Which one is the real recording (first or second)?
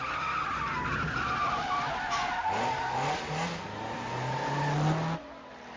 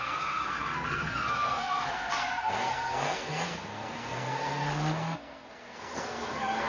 first